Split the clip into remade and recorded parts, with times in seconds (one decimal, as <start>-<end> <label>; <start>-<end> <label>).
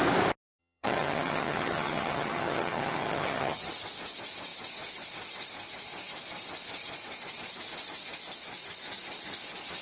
0.0-0.6 recorded; 0.6-3.7 remade; 3.7-9.8 recorded